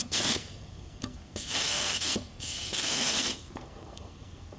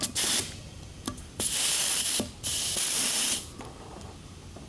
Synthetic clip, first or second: first